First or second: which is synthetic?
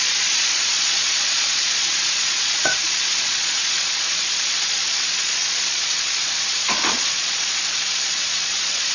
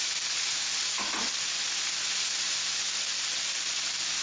first